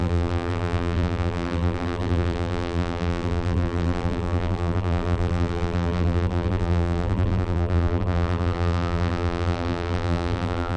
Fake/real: fake